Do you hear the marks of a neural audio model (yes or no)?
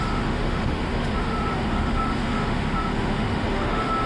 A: yes